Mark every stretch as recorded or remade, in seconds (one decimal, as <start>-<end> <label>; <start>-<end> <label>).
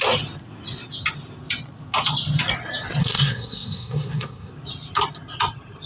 0.0-3.0 recorded; 3.0-4.5 remade; 4.5-5.9 recorded